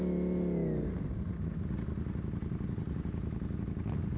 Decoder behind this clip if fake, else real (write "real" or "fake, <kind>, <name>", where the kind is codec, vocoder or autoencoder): real